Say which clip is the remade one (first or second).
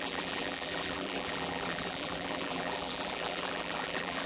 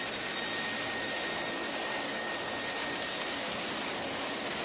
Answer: first